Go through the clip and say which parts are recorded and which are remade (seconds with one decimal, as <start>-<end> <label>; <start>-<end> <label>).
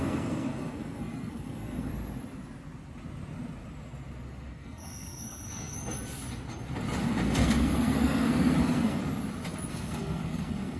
0.0-1.9 remade; 1.9-4.5 recorded; 4.5-5.8 remade; 5.8-7.0 recorded; 7.0-9.0 remade; 9.0-9.7 recorded; 9.7-10.8 remade